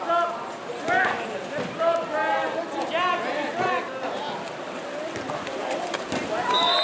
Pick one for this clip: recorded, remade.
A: recorded